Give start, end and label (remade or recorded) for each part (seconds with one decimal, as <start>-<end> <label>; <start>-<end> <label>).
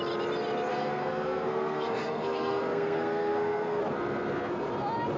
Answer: 0.0-0.7 recorded; 0.7-3.8 remade; 3.8-5.2 recorded